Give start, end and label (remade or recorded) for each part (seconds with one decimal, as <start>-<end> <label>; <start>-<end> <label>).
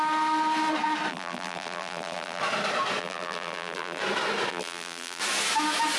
0.0-1.1 recorded; 1.1-2.4 remade; 2.4-3.0 recorded; 3.0-4.0 remade; 4.0-4.5 recorded; 4.5-5.2 remade; 5.2-6.0 recorded